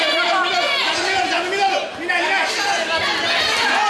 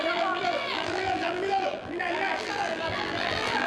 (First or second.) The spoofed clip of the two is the second